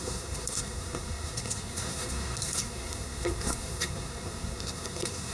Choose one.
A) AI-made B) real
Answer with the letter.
A